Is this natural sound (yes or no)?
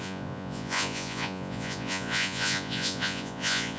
no